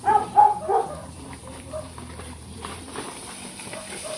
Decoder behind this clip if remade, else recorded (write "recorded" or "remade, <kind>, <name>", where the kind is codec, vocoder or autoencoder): remade, vocoder, BigVGAN v2